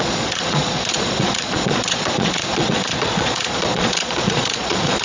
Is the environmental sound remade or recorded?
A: remade